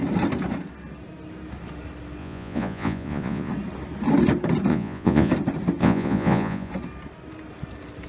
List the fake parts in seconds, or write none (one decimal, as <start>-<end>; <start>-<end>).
2.2-3.5; 4.7-5.3; 5.8-6.7

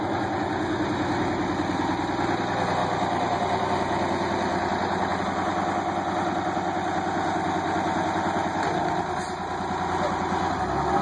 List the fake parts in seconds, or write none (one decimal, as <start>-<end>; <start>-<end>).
none

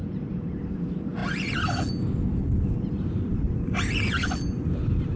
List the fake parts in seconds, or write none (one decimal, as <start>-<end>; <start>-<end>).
0.0-0.6

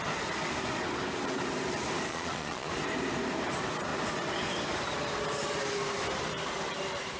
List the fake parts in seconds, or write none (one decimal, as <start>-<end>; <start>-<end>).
2.1-2.7